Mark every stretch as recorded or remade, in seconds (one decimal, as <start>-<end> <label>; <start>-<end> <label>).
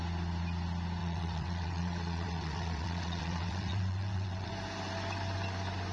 0.0-1.0 recorded; 1.0-4.5 remade; 4.5-5.9 recorded